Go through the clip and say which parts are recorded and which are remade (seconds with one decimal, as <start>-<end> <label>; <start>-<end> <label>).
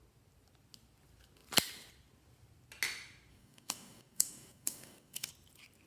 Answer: 0.0-3.3 recorded; 3.3-5.3 remade; 5.3-5.9 recorded